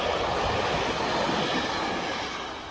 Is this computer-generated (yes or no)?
no